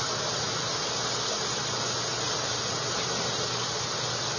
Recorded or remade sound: recorded